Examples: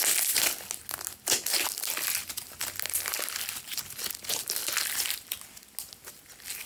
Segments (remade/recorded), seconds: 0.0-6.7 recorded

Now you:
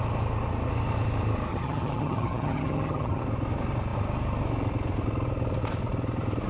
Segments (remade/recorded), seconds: 0.0-1.5 recorded; 1.5-3.2 remade; 3.2-6.5 recorded

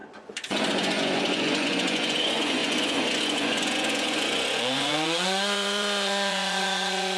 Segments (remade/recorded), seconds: 0.0-7.2 remade

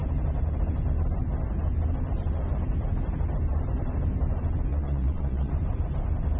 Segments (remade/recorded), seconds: 0.0-4.7 recorded; 4.7-5.5 remade; 5.5-6.4 recorded

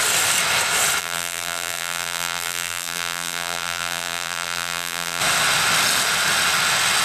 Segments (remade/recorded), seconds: 0.0-1.0 recorded; 1.0-5.2 remade; 5.2-7.0 recorded

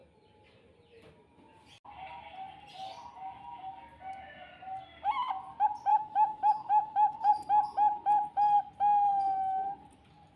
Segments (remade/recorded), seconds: 0.0-5.9 recorded; 5.9-7.3 remade; 7.3-10.4 recorded

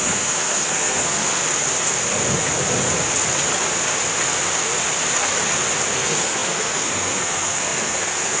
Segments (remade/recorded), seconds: 0.0-1.4 remade; 1.4-5.9 recorded; 5.9-8.4 remade